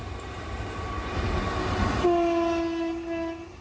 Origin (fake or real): real